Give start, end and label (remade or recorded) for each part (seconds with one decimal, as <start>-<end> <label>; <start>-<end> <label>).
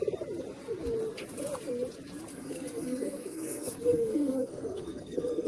0.0-2.3 recorded; 2.3-5.5 remade